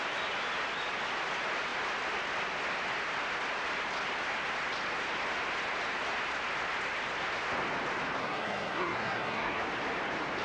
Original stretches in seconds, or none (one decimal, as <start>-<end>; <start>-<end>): 0.0-8.2; 9.6-10.4